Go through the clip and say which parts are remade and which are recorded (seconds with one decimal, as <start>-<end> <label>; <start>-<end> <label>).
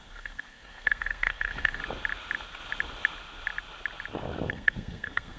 0.0-1.8 remade; 1.8-4.5 recorded; 4.5-5.4 remade